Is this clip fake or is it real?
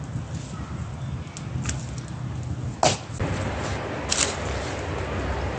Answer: real